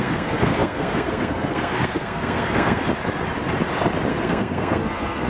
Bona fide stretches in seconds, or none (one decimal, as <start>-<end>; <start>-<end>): 2.8-4.1